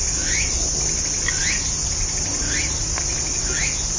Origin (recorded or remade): recorded